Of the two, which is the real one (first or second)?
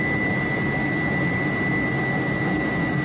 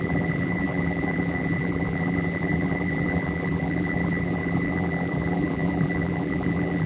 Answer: first